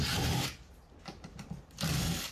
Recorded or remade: recorded